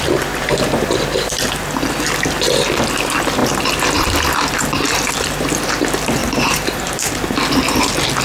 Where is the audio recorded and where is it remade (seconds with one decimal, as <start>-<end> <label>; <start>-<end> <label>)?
0.0-6.2 recorded; 6.2-7.1 remade; 7.1-8.2 recorded